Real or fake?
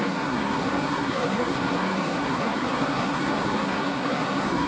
fake